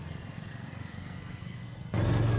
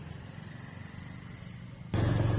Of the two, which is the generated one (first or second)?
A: first